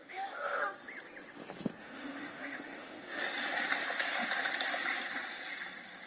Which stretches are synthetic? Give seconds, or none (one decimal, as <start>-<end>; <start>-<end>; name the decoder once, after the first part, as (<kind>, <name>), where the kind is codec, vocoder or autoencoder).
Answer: 0.0-0.6 (autoencoder, DAC-VAE); 1.8-3.2